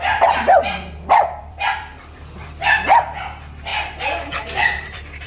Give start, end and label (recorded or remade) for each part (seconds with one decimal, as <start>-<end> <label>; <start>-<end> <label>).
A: 0.0-1.9 remade; 1.9-3.2 recorded; 3.2-3.7 remade; 3.7-4.4 recorded; 4.4-5.3 remade